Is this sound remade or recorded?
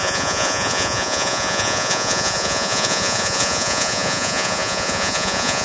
remade